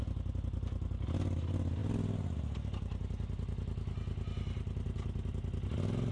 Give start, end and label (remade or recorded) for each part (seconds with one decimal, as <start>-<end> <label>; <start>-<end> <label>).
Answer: 0.0-6.1 recorded